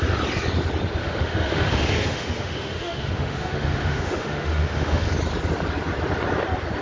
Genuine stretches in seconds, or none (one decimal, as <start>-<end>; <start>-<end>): 0.0-1.0; 5.1-6.8